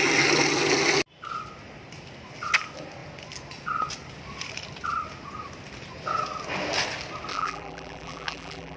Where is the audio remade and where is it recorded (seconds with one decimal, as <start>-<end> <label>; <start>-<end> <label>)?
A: 0.0-7.3 recorded; 7.3-8.8 remade